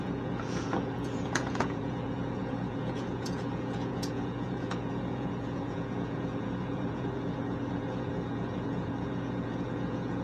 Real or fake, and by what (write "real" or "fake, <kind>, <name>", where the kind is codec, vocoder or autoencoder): fake, vocoder, Vocos